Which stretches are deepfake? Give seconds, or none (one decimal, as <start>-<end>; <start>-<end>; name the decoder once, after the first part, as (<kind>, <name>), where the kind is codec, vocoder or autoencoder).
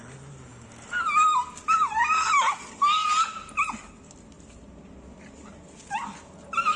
none